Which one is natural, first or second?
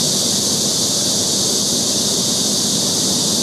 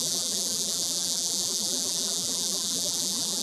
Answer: first